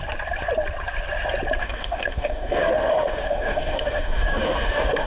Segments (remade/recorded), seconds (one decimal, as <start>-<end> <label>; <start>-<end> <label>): 0.0-1.6 recorded; 1.6-5.1 remade